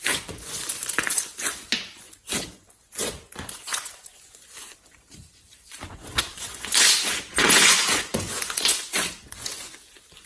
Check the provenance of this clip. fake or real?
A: fake